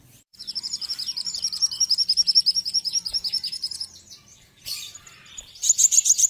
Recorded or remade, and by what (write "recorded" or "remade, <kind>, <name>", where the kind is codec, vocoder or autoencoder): remade, vocoder, BigVGAN v2